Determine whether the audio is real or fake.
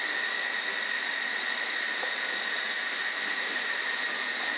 real